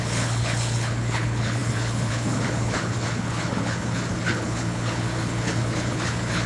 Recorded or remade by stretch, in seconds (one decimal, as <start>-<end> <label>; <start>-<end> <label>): 0.0-6.5 remade